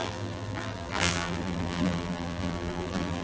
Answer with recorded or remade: remade